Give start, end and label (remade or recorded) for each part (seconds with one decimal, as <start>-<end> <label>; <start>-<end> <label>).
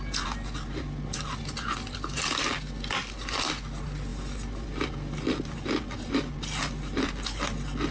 0.0-7.9 recorded